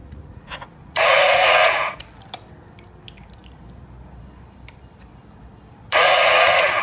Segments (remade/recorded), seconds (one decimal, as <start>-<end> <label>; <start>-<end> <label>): 0.0-2.0 remade; 2.0-5.9 recorded; 5.9-6.8 remade